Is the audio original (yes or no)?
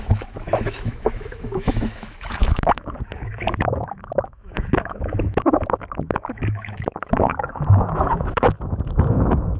no